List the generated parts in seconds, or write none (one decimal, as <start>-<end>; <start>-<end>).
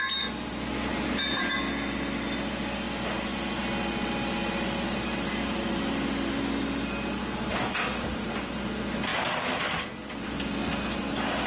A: 0.9-1.5; 7.5-8.5